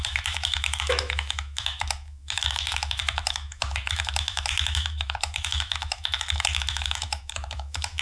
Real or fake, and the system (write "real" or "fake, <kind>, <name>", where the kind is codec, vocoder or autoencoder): fake, autoencoder, DAC-VAE